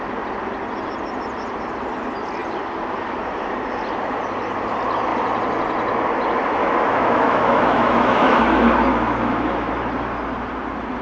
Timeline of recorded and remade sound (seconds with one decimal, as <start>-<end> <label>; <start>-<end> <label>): 0.0-6.6 recorded; 6.6-8.4 remade; 8.4-8.9 recorded; 8.9-9.7 remade; 9.7-11.0 recorded